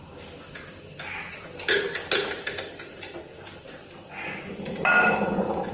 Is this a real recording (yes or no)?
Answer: yes